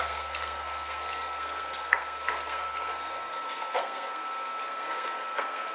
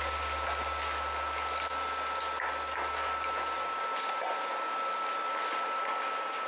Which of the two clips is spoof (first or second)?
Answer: first